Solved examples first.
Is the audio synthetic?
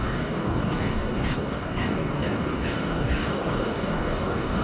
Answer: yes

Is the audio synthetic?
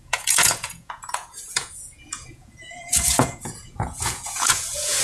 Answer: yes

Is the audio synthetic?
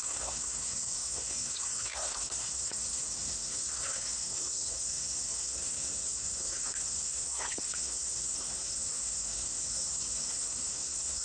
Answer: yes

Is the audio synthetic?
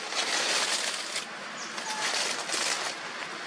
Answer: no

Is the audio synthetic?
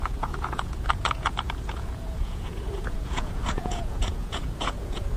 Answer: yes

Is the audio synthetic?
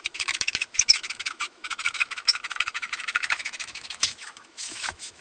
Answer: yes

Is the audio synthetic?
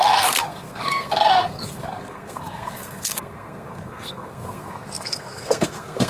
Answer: yes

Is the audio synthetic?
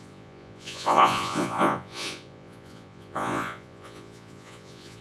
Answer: yes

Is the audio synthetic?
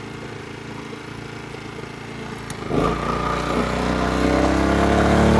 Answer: no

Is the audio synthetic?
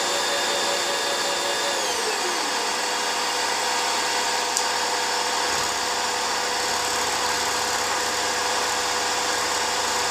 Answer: no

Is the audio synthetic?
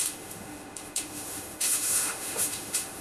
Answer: yes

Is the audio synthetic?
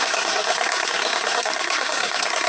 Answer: yes